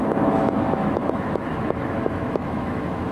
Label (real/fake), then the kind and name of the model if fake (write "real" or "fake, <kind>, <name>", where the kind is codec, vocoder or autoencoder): fake, autoencoder, DAC-VAE